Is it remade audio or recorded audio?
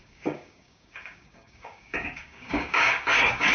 remade